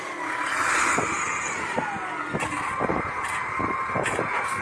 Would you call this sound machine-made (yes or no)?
no